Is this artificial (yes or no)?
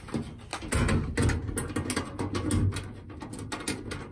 no